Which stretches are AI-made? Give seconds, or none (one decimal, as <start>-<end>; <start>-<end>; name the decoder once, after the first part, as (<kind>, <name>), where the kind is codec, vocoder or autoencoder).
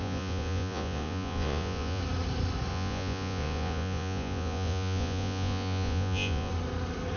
0.0-2.0 (vocoder, Vocos); 2.7-6.5